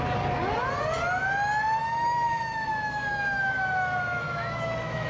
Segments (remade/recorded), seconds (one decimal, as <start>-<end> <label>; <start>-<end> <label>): 0.0-1.8 recorded; 1.8-5.1 remade